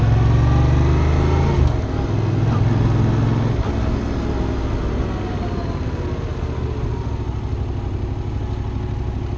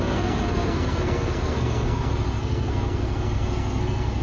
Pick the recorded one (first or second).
first